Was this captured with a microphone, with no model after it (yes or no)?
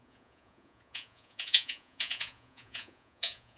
no